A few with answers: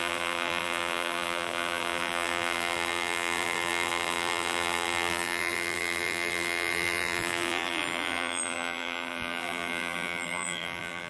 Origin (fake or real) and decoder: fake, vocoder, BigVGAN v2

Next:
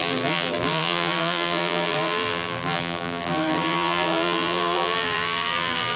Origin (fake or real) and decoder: fake, vocoder, BigVGAN v2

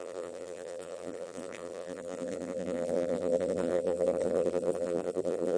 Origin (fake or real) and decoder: fake, vocoder, BigVGAN v2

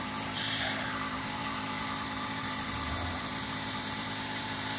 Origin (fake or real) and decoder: fake, vocoder, BigVGAN v2